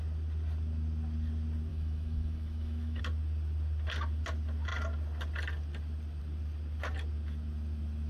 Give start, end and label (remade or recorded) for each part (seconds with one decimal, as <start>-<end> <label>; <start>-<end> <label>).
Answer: 0.0-1.7 recorded; 1.7-3.0 remade; 3.0-8.1 recorded

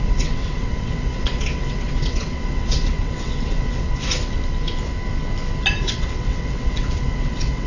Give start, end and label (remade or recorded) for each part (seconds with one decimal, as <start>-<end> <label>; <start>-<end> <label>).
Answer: 0.0-4.4 remade; 4.4-5.8 recorded; 5.8-7.7 remade